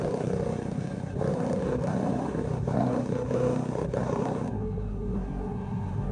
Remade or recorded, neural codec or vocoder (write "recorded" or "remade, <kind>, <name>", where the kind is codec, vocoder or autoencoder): remade, codec, SNAC